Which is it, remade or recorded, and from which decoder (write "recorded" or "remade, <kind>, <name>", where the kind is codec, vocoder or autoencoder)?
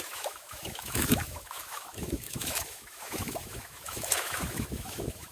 remade, autoencoder, DAC-VAE